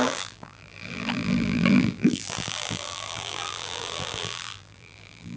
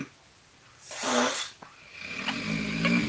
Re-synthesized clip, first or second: first